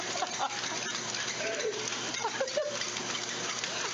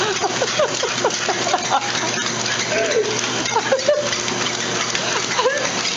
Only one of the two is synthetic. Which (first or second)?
first